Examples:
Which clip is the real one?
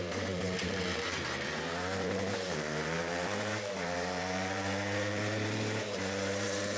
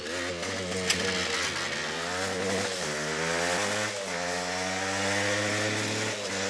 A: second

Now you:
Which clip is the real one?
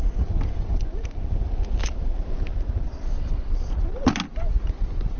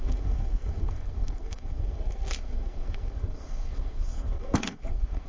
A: first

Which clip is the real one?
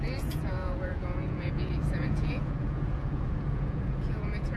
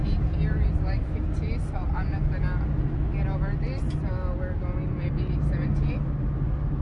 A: second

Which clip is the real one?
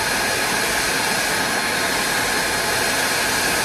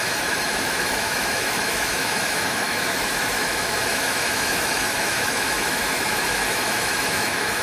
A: first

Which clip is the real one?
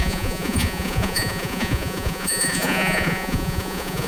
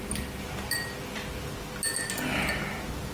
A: second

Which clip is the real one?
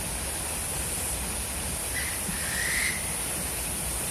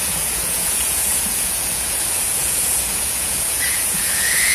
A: first